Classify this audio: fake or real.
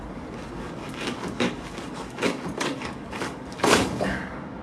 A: fake